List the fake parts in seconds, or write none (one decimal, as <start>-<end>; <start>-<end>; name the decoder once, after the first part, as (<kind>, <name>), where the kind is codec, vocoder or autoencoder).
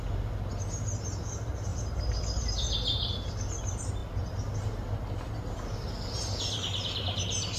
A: 1.7-2.6 (vocoder, BigVGAN v2)